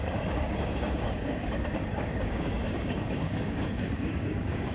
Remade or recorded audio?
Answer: remade